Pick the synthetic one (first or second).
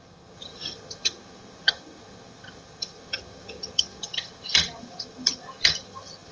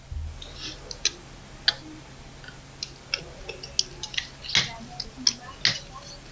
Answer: first